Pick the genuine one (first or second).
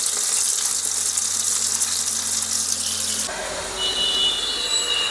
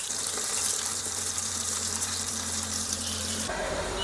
first